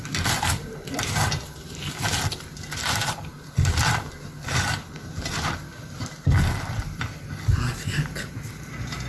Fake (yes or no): no